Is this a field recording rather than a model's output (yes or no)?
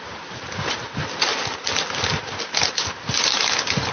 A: no